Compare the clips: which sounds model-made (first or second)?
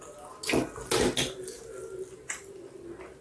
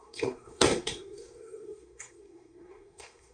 second